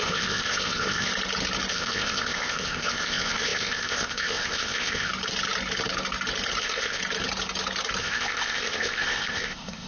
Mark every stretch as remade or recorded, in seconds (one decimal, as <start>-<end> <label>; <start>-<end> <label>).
0.0-1.1 remade; 1.1-1.7 recorded; 1.7-5.1 remade; 5.1-6.6 recorded; 6.6-7.0 remade; 7.0-8.0 recorded; 8.0-9.9 remade